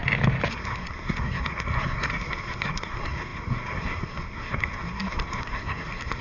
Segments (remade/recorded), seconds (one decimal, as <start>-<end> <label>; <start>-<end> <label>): 0.0-0.5 recorded; 0.5-6.2 remade